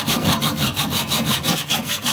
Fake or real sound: fake